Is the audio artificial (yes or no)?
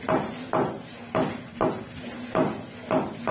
no